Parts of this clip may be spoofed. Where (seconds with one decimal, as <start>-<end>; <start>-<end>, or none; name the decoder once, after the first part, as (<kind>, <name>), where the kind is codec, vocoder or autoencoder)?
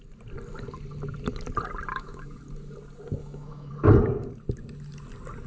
1.9-2.4 (autoencoder, DAC-VAE); 3.2-3.7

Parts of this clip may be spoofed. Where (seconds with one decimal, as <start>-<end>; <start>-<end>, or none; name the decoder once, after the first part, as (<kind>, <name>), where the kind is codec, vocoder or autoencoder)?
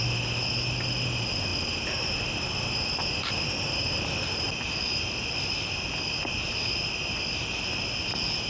none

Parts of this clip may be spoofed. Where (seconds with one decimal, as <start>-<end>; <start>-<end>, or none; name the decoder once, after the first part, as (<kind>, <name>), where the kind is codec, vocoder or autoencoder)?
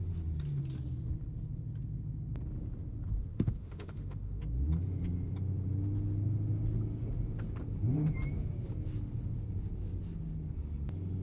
3.3-4.4 (autoencoder, DAC-VAE)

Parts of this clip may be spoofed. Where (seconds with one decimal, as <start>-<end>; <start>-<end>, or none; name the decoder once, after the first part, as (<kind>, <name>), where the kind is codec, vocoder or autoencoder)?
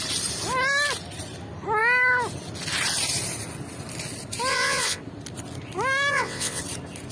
4.5-5.0 (vocoder, WaveNeXt); 6.1-6.6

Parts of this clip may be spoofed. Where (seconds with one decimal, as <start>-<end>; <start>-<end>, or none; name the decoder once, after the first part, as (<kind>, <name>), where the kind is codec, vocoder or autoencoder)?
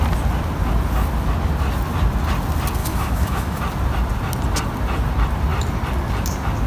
2.8-3.6 (autoencoder, DAC-VAE)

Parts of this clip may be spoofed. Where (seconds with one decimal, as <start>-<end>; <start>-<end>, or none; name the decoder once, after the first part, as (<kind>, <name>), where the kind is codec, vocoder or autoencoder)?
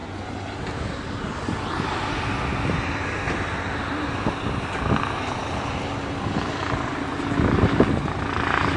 none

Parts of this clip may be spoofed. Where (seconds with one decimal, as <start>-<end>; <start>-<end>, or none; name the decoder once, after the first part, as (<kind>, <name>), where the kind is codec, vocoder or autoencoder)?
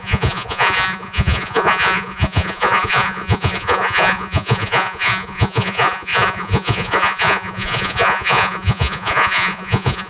0.0-10.1 (vocoder, Vocos)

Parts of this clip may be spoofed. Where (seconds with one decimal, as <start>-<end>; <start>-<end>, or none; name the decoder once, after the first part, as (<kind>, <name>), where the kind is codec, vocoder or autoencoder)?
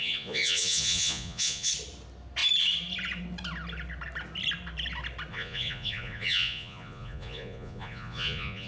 0.0-1.7 (vocoder, Vocos); 5.3-8.7